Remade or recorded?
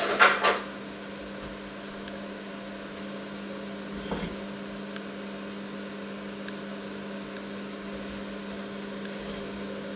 recorded